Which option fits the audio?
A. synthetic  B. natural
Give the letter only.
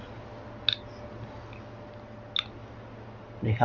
B